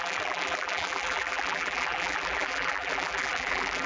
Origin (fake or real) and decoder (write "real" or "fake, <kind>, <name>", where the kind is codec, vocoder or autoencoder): fake, vocoder, BigVGAN v2